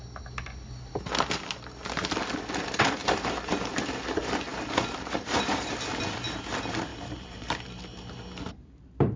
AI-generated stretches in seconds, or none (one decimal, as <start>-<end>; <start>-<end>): 3.0-3.5; 4.5-5.9; 6.9-7.8